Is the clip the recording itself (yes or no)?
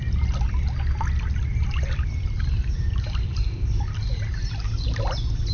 yes